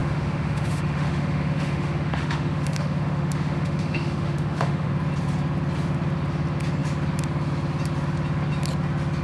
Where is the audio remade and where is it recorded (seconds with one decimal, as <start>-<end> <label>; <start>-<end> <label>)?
0.0-4.9 remade; 4.9-9.2 recorded